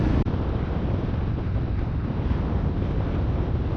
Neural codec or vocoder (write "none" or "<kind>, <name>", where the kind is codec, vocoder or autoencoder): none